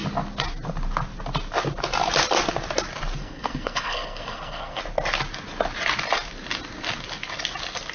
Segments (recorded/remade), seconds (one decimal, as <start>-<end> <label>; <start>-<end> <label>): 0.0-3.2 recorded; 3.2-4.8 remade; 4.8-7.9 recorded

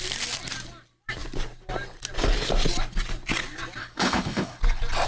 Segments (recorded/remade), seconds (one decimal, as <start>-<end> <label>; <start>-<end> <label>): 0.0-3.8 recorded; 3.8-4.6 remade; 4.6-5.1 recorded

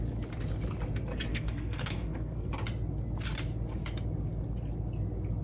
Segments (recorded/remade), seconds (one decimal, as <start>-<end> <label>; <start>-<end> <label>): 0.0-1.3 recorded; 1.3-2.5 remade; 2.5-5.4 recorded

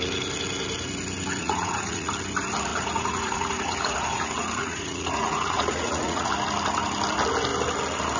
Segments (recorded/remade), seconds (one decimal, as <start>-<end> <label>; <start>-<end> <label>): 0.0-1.4 recorded; 1.4-2.1 remade; 2.1-2.7 recorded; 2.7-6.3 remade; 6.3-8.2 recorded

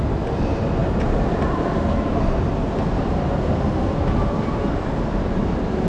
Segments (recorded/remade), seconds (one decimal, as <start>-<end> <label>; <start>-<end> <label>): 0.0-0.8 recorded; 0.8-3.0 remade; 3.0-5.9 recorded

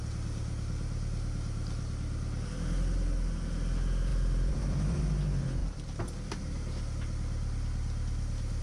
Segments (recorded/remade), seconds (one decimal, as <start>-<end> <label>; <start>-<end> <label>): 0.0-4.1 recorded; 4.1-5.0 remade; 5.0-5.6 recorded; 5.6-6.4 remade; 6.4-8.6 recorded